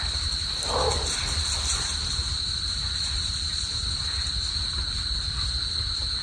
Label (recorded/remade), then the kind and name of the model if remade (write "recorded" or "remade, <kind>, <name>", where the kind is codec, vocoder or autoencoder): recorded